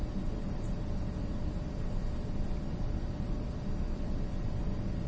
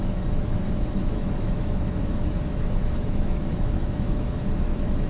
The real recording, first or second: first